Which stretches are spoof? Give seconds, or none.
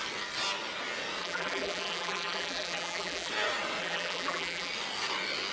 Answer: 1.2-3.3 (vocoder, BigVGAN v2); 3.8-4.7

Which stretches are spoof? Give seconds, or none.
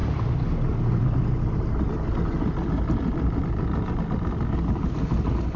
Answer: none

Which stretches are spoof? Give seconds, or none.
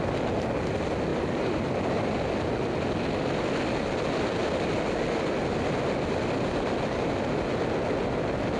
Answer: 1.1-2.1 (vocoder, BigVGAN v2)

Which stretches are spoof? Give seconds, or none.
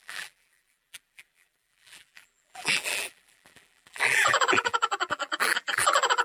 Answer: 0.0-6.2 (vocoder, BigVGAN v2)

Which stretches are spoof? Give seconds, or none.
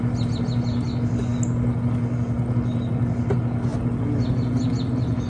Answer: none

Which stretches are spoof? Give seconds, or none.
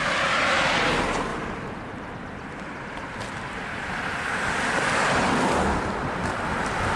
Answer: none